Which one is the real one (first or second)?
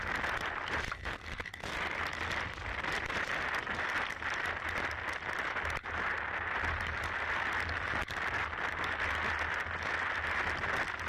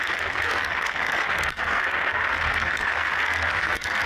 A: first